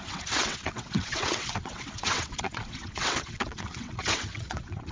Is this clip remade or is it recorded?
remade